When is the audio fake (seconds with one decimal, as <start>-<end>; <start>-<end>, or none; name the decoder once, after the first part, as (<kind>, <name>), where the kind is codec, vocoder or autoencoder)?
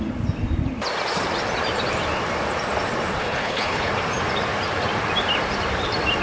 3.2-3.9 (codec, HILCodec)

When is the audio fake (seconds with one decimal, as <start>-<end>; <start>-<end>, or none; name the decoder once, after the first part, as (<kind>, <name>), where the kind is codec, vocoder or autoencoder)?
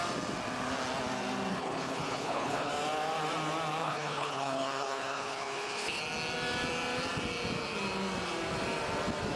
1.5-2.7 (codec, HILCodec); 3.8-6.0